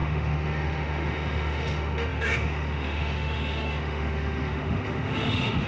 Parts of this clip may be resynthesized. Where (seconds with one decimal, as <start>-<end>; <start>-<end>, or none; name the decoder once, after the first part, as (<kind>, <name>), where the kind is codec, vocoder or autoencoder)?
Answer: 0.0-5.7 (autoencoder, DAC-VAE)